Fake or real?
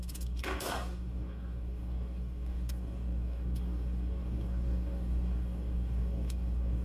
fake